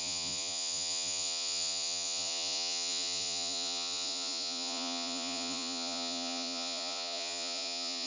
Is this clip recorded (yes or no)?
no